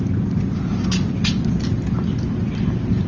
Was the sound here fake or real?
real